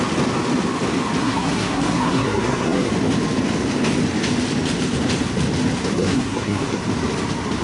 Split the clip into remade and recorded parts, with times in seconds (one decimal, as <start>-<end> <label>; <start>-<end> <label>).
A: 0.0-1.2 recorded; 1.2-2.9 remade; 2.9-5.9 recorded; 5.9-6.8 remade; 6.8-7.6 recorded